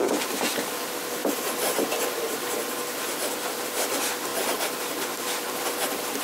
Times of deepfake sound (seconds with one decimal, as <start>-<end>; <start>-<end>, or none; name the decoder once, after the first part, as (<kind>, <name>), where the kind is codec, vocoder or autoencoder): 0.0-1.2 (vocoder, BigVGAN v2); 3.3-4.3; 5.5-6.2